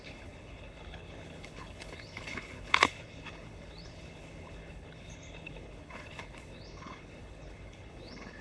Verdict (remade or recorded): remade